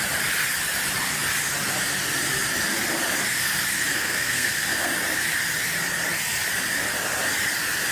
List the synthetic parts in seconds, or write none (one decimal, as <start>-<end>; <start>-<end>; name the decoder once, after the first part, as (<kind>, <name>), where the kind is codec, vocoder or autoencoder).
3.9-4.9 (codec, SNAC)